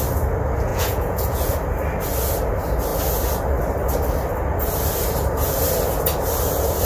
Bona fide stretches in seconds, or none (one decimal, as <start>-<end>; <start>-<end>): 0.0-0.7; 1.5-6.8